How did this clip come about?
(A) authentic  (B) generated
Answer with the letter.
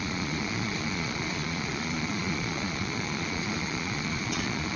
B